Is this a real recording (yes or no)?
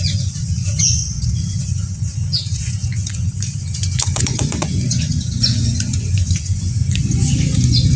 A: no